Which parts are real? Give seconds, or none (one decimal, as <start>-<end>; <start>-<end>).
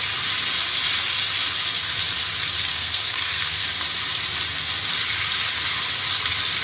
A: 0.0-2.7; 3.6-6.6